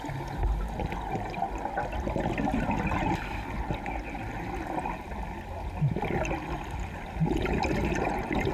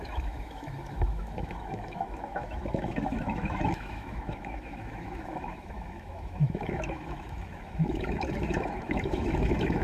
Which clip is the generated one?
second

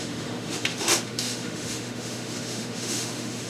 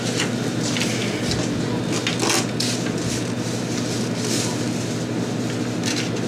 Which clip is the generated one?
first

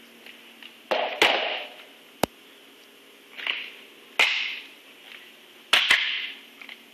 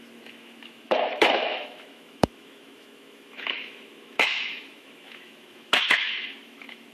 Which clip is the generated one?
second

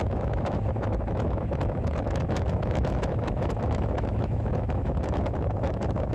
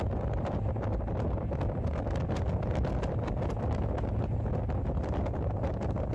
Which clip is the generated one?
first